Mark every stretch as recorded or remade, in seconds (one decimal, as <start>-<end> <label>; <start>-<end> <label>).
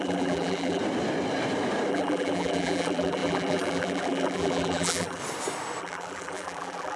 0.0-0.8 remade; 0.8-1.9 recorded; 1.9-5.2 remade; 5.2-5.8 recorded; 5.8-7.0 remade